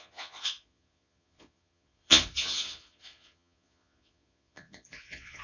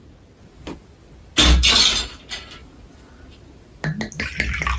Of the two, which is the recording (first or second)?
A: second